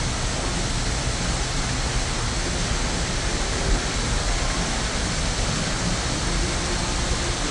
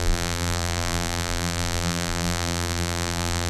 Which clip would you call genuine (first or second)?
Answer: first